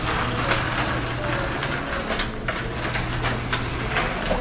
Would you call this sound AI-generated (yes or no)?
no